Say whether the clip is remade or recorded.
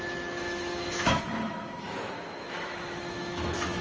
remade